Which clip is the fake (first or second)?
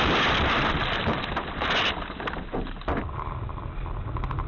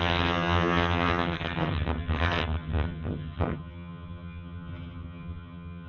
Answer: second